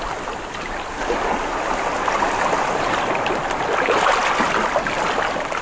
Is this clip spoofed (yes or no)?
no